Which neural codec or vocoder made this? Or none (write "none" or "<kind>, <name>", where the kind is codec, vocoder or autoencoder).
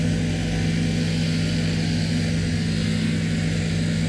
none